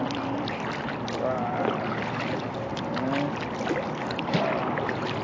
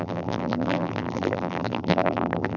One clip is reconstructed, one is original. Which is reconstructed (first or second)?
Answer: second